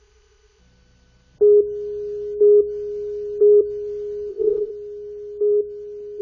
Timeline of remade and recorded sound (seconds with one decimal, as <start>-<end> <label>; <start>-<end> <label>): 0.0-0.6 remade; 0.6-4.3 recorded; 4.3-4.7 remade; 4.7-6.2 recorded